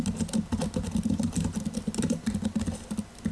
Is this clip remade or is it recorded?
recorded